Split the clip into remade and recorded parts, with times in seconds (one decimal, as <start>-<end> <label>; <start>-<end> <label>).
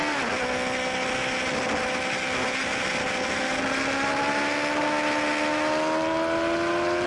0.0-7.1 recorded